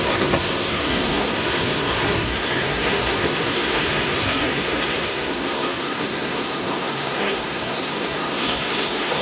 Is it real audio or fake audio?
fake